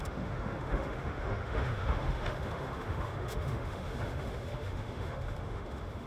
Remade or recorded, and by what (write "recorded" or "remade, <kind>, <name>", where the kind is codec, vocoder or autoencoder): remade, autoencoder, DAC-VAE